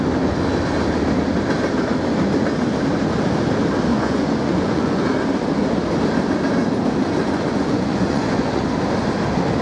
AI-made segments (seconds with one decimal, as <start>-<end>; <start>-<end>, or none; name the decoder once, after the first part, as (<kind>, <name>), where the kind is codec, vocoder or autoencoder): 3.9-5.0 (vocoder, Vocos); 7.2-8.6